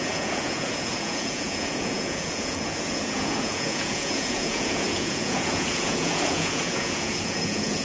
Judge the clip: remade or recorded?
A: remade